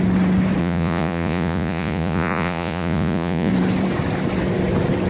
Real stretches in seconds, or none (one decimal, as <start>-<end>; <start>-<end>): 0.0-0.6; 3.5-5.1